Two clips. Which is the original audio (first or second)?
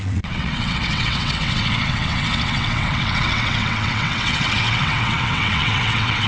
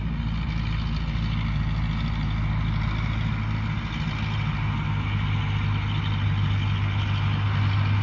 second